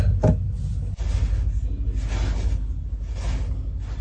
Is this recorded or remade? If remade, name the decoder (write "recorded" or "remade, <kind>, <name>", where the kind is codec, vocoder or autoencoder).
recorded